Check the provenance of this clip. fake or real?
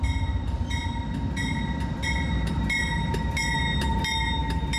real